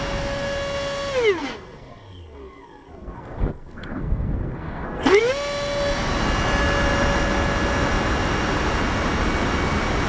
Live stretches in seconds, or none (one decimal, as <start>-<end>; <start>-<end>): 0.0-1.4; 5.2-10.1